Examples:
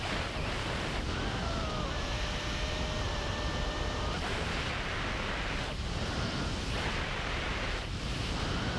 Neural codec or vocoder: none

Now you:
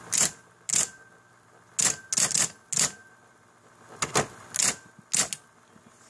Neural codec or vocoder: none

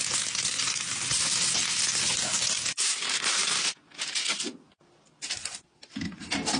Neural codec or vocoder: none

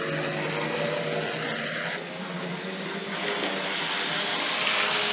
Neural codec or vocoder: none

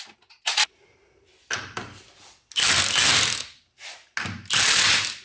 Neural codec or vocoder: none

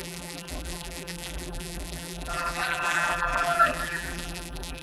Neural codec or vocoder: vocoder, BigVGAN v2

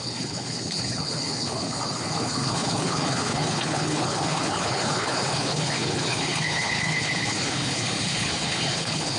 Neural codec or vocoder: codec, HILCodec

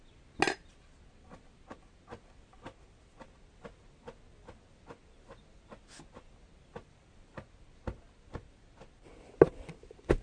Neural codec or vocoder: none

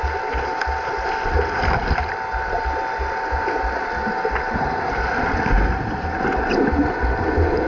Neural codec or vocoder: none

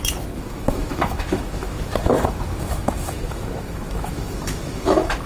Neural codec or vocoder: autoencoder, DAC-VAE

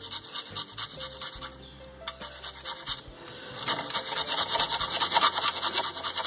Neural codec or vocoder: none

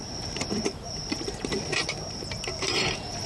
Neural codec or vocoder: vocoder, BigVGAN v2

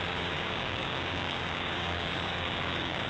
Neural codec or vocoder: codec, DAC